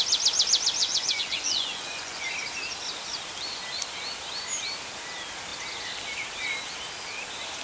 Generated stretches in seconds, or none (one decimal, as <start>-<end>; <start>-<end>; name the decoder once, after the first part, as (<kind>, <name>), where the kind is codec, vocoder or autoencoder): 0.8-2.3 (vocoder, Vocos)